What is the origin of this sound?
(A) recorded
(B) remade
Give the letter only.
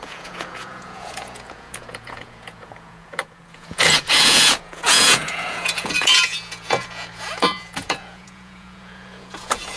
B